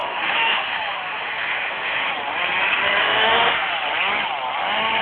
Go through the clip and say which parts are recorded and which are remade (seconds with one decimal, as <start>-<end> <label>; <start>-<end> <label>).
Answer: 0.0-2.0 remade; 2.0-3.0 recorded; 3.0-3.7 remade; 3.7-5.0 recorded